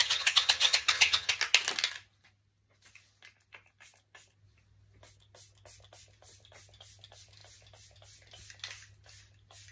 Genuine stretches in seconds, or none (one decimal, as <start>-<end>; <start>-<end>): 1.3-9.7